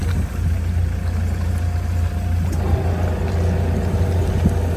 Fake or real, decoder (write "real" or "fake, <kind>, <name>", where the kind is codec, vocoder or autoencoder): real